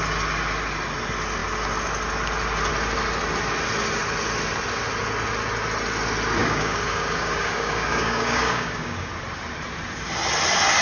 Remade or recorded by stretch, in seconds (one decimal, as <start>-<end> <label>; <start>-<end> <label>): 0.0-6.4 recorded; 6.4-9.1 remade; 9.1-10.8 recorded